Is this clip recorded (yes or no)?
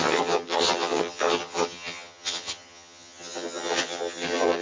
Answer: no